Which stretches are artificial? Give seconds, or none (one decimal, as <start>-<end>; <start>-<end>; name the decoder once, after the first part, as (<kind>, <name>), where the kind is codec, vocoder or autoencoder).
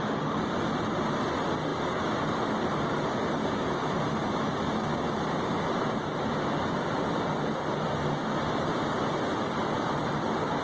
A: none